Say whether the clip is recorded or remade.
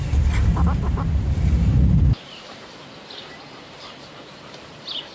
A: remade